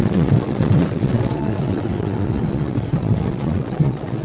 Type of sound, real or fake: fake